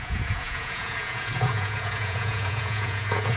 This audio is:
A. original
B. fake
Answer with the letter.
B